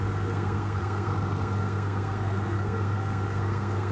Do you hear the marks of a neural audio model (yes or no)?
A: yes